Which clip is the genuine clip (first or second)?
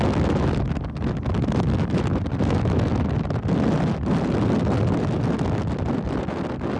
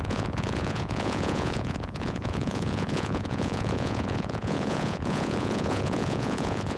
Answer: first